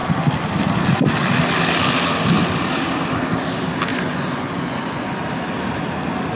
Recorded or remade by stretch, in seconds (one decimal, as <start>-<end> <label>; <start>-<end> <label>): 0.0-3.9 recorded; 3.9-5.1 remade; 5.1-6.4 recorded